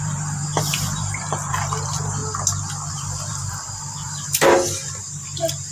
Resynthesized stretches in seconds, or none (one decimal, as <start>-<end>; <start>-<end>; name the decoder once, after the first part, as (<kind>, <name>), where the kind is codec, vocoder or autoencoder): 0.0-2.2 (vocoder, BigVGAN v2); 2.9-5.7